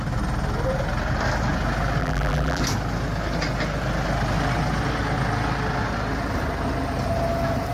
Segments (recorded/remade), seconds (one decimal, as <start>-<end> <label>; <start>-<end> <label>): 0.0-2.0 recorded; 2.0-2.6 remade; 2.6-7.7 recorded